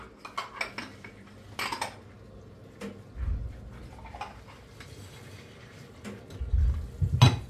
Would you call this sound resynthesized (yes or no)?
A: no